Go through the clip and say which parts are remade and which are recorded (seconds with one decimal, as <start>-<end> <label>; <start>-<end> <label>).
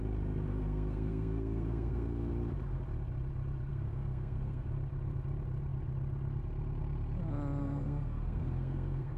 0.0-0.5 recorded; 0.5-2.3 remade; 2.3-3.7 recorded; 3.7-4.7 remade; 4.7-7.6 recorded; 7.6-9.2 remade